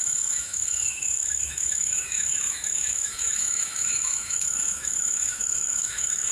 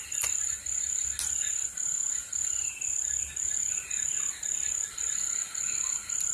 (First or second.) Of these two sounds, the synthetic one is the first